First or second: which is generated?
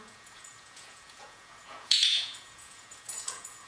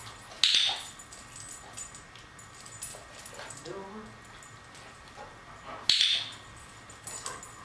first